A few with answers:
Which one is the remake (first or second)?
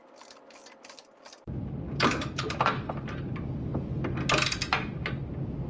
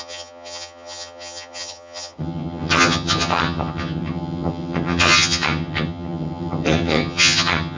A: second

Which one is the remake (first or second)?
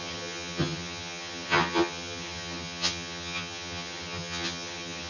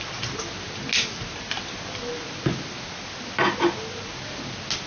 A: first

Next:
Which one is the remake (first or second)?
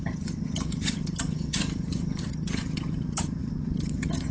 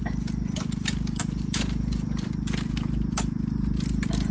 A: first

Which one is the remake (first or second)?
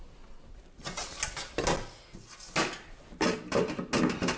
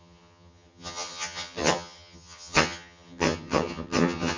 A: second